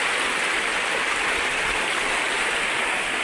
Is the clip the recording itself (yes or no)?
yes